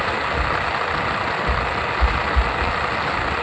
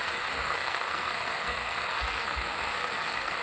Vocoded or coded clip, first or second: second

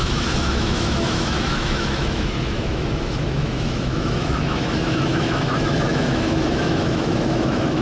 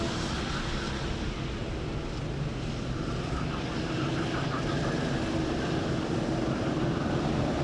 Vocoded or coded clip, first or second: first